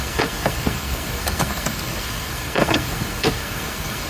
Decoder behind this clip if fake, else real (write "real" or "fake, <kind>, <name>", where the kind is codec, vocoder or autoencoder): fake, codec, SNAC